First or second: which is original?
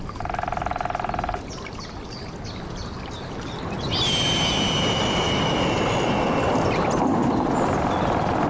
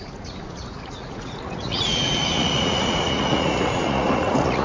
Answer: first